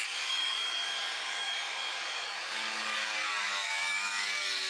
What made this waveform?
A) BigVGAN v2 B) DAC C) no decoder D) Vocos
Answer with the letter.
B